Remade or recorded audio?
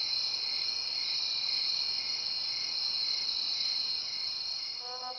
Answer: recorded